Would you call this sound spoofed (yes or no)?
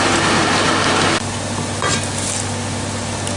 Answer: no